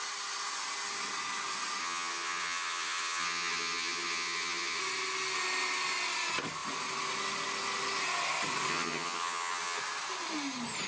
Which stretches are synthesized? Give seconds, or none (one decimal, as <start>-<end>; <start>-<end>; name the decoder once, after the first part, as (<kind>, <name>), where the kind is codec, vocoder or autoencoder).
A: 1.8-4.8 (vocoder, HiFi-GAN); 8.7-9.8